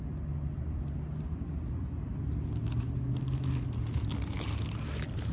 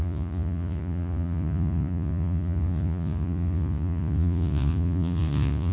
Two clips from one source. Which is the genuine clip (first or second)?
first